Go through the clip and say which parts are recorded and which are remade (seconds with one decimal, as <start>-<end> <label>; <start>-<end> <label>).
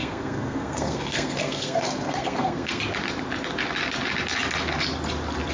0.0-2.8 remade; 2.8-5.5 recorded